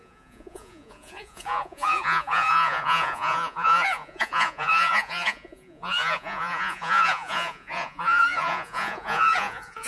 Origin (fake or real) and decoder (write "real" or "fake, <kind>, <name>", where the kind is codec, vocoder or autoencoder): fake, vocoder, Vocos